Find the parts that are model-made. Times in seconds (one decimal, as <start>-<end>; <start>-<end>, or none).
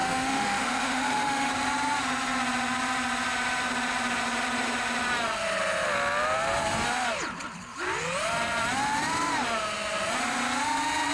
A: 0.0-1.5